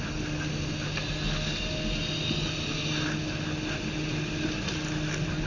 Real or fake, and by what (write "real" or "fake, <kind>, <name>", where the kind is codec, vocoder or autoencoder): real